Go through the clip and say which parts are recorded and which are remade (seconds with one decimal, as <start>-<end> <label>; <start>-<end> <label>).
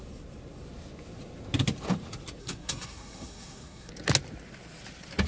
0.0-2.4 recorded; 2.4-3.9 remade; 3.9-5.3 recorded